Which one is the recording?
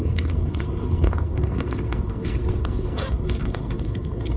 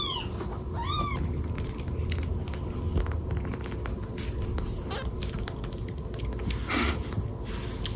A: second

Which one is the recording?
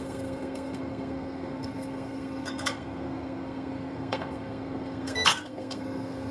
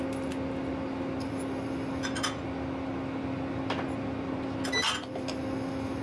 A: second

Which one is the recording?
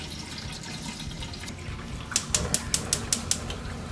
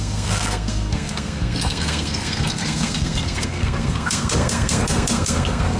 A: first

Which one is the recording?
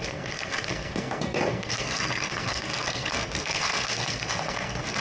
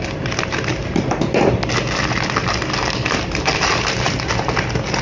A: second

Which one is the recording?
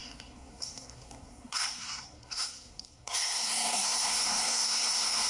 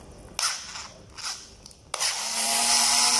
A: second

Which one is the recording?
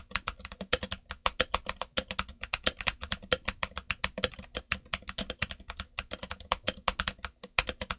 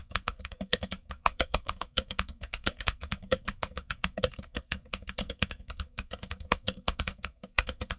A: first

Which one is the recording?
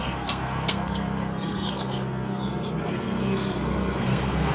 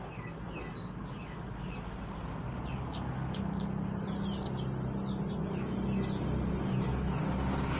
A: second